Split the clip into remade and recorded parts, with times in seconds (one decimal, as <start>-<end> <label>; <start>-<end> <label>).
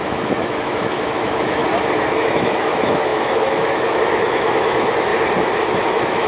0.0-1.6 remade; 1.6-2.1 recorded; 2.1-5.1 remade; 5.1-5.8 recorded; 5.8-6.3 remade